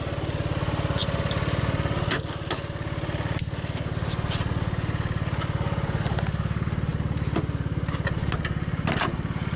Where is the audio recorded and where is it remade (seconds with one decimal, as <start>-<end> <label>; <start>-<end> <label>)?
0.0-9.6 recorded